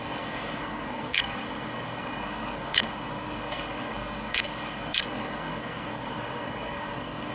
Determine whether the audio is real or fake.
fake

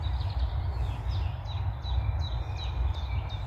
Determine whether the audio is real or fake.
real